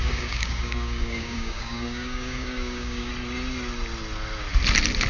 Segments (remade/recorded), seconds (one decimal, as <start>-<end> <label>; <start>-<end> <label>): 0.0-3.1 remade; 3.1-5.1 recorded